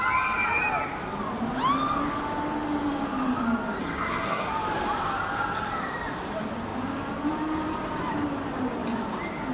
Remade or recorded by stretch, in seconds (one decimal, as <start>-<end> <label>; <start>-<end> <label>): 0.0-3.8 recorded; 3.8-4.5 remade; 4.5-9.5 recorded